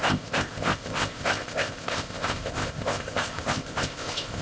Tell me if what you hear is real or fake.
fake